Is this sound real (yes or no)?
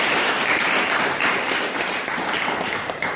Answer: no